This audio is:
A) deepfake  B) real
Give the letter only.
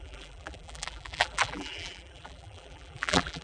A